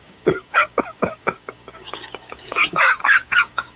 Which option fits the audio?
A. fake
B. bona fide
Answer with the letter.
A